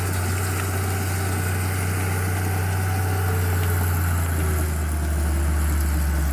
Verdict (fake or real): real